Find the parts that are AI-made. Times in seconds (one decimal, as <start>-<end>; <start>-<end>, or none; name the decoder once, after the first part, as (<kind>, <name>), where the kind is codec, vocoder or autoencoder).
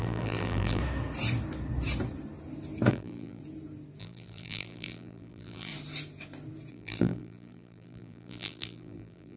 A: 0.0-0.8 (vocoder, BigVGAN v2); 2.9-3.4; 4.0-5.7; 6.7-9.4